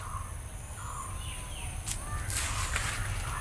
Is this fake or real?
real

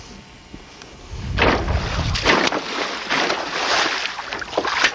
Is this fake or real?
real